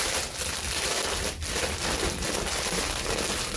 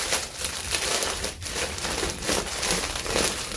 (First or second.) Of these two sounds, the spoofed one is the second